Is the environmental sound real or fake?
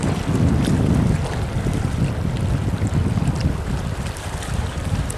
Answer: real